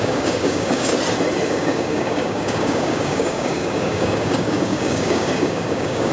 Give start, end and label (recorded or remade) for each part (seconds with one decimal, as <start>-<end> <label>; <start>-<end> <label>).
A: 0.0-0.9 remade; 0.9-1.5 recorded; 1.5-6.1 remade